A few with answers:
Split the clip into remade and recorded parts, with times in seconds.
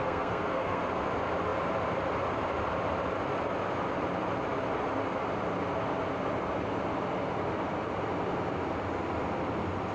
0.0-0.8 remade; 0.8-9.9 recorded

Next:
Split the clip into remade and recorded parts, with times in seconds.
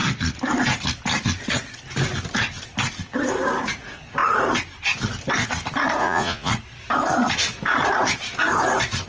0.0-6.0 recorded; 6.0-6.5 remade; 6.5-9.1 recorded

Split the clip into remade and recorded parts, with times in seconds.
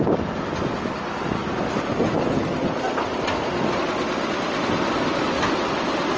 0.0-6.2 recorded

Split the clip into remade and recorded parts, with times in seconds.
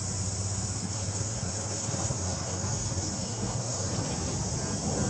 0.0-0.8 recorded; 0.8-3.9 remade; 3.9-5.1 recorded